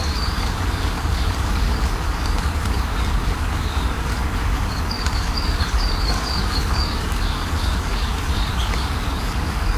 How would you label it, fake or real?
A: fake